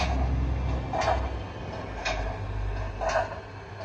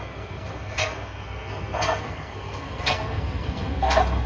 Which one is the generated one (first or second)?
second